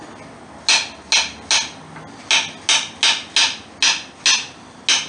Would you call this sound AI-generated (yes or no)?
no